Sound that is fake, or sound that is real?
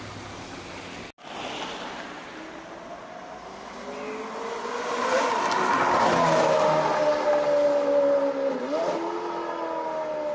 real